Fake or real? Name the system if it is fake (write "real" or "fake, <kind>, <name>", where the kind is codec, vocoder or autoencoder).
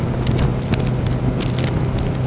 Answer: real